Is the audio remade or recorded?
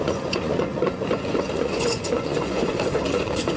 remade